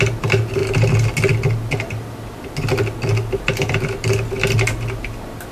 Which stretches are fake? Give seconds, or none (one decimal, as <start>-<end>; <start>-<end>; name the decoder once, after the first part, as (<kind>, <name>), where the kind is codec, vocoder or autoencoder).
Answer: none